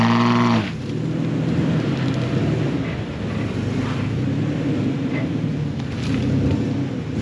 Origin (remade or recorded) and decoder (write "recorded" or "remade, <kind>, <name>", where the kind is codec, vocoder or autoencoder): recorded